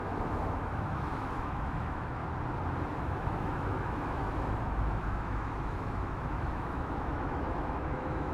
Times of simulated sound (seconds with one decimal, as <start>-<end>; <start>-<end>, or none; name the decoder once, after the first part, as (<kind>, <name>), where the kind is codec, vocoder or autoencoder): 0.0-2.2 (autoencoder, DAC-VAE); 3.0-8.3